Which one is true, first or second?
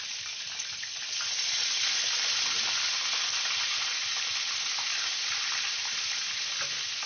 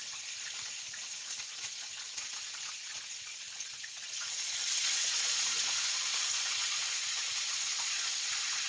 first